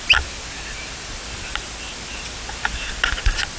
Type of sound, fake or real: real